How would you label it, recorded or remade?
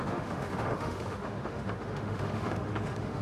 remade